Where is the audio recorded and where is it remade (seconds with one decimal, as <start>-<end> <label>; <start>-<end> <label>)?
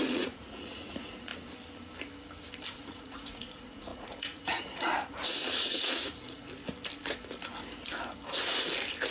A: 0.0-1.3 remade; 1.3-2.7 recorded; 2.7-6.4 remade; 6.4-9.1 recorded